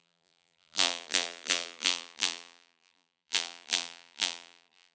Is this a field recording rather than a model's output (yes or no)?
no